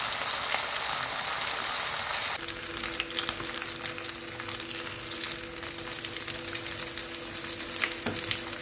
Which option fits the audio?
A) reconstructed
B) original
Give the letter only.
B